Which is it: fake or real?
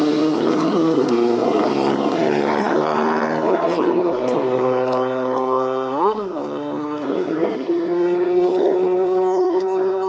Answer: fake